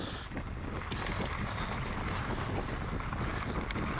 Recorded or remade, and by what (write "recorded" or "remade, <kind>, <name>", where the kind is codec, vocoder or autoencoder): recorded